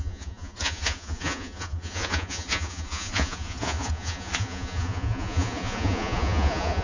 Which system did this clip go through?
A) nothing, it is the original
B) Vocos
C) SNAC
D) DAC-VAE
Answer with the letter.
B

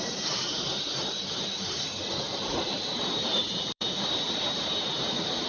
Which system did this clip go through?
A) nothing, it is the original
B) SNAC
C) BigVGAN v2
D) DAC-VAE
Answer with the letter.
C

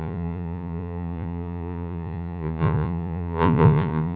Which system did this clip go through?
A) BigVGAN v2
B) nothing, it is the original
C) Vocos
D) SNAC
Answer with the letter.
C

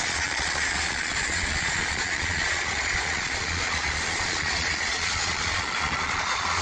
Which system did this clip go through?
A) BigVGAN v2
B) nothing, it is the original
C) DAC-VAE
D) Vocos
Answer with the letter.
D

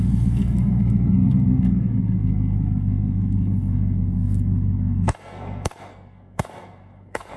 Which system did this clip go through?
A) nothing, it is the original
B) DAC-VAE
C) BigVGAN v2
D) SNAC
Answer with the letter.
D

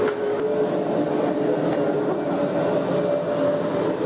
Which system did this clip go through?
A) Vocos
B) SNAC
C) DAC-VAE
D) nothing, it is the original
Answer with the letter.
D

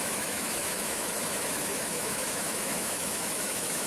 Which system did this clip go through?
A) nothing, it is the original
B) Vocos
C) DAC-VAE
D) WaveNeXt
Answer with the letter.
C